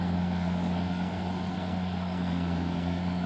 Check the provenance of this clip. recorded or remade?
remade